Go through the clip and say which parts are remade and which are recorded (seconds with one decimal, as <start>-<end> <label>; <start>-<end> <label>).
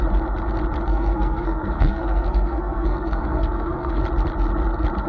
0.0-0.9 recorded; 0.9-4.0 remade; 4.0-5.1 recorded